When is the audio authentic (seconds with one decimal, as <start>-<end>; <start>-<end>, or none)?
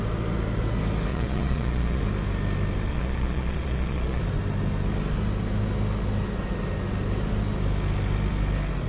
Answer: 0.0-1.1; 2.0-2.9; 4.2-8.9